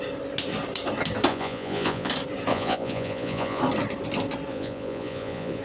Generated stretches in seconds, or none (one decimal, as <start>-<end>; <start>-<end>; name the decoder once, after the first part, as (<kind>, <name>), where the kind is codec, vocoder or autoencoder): 1.3-2.1 (vocoder, Vocos); 2.5-3.6; 4.5-5.6